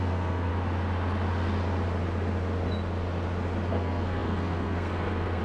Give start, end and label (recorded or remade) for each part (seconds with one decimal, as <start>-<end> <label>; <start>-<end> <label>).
0.0-0.5 remade; 0.5-3.7 recorded; 3.7-5.4 remade